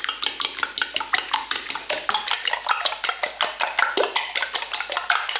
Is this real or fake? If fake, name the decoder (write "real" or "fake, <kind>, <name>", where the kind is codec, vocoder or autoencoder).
real